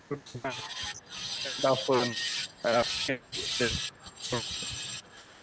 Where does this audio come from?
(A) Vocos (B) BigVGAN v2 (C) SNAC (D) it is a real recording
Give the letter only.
D